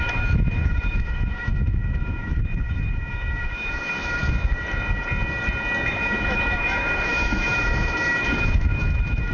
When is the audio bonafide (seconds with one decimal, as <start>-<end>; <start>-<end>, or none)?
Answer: 4.2-5.9

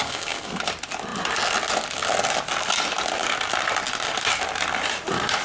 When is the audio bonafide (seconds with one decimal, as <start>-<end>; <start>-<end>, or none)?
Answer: 0.6-5.4

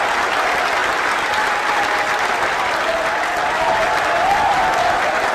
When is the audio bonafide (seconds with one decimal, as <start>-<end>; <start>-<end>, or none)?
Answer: 0.0-5.3

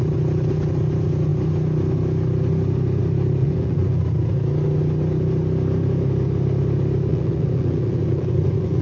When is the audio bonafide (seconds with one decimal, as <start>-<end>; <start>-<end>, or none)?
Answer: 0.0-3.4; 4.0-7.1

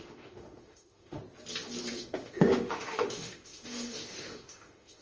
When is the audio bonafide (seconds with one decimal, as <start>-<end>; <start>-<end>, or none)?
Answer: 1.2-1.9

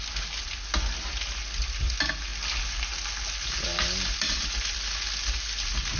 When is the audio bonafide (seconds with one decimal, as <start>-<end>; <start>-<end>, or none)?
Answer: 0.0-6.0